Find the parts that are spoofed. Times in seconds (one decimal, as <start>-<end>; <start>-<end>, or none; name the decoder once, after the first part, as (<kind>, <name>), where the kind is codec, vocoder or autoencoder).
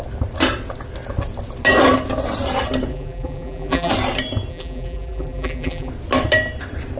2.9-3.9 (vocoder, BigVGAN v2); 4.5-5.9